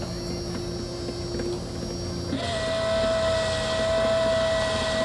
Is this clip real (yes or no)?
yes